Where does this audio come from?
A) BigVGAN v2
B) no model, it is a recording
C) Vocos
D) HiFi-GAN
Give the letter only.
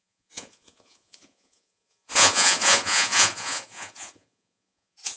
C